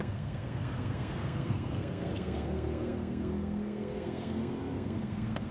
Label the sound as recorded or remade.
remade